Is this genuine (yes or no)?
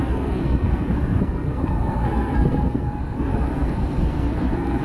no